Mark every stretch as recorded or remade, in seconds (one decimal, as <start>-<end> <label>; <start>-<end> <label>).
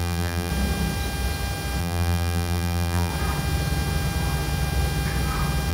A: 0.0-0.5 remade; 0.5-1.8 recorded; 1.8-3.1 remade; 3.1-5.7 recorded